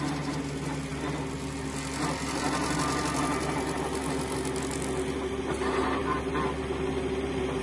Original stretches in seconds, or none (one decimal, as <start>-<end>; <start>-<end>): 0.0-7.6